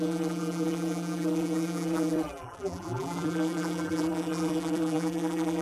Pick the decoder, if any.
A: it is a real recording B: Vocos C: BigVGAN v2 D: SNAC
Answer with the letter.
C